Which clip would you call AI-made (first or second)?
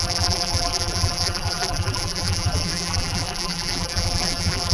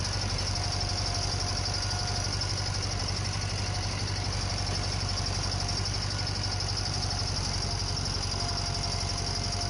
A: first